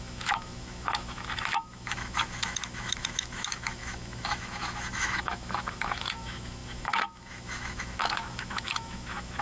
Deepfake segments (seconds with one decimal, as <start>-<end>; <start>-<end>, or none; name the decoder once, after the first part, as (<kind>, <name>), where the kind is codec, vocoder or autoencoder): 0.0-9.4 (autoencoder, DAC-VAE)